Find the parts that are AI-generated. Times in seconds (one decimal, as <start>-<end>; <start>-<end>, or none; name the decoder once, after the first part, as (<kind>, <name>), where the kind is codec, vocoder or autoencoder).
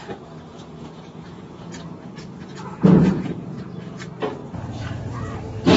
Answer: 0.5-4.0 (vocoder, Vocos)